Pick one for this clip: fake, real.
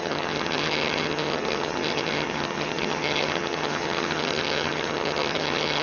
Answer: fake